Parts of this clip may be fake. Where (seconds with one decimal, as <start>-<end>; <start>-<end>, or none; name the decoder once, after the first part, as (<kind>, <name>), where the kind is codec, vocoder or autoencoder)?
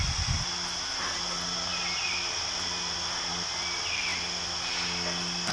none